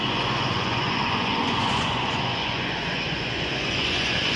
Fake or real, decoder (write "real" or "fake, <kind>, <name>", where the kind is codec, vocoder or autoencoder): fake, vocoder, Vocos